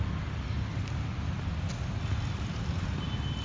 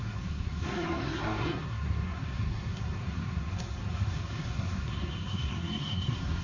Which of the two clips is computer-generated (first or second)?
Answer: second